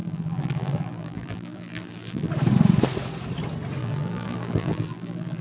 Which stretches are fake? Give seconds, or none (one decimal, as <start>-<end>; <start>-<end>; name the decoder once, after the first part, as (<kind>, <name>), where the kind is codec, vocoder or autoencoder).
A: 0.0-2.3 (vocoder, BigVGAN v2); 3.8-5.4